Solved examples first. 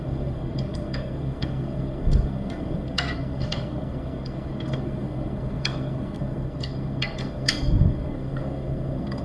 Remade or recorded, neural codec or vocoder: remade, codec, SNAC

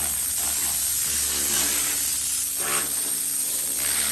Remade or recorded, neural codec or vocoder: recorded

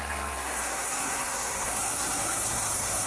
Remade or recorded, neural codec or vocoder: remade, codec, SNAC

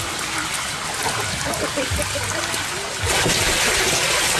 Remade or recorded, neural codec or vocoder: recorded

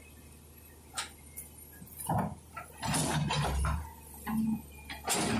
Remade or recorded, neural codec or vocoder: recorded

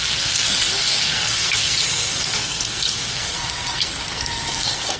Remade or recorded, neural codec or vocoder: remade, codec, SNAC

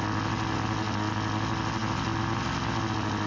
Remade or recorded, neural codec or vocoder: recorded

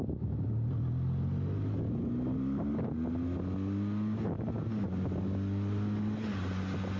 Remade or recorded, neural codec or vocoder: recorded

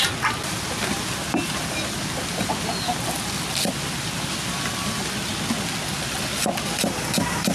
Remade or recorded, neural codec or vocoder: recorded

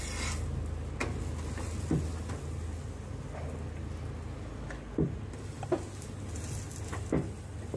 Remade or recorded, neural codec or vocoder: recorded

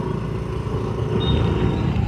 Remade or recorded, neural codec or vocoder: recorded